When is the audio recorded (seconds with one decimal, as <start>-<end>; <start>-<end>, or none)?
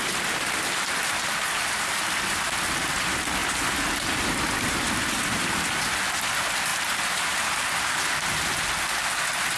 0.0-6.7; 7.3-9.6